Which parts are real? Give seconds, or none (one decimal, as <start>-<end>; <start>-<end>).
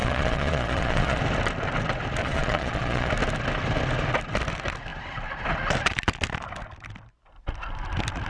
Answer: 1.2-2.2; 3.1-8.3